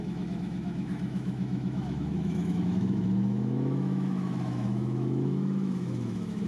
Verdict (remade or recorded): remade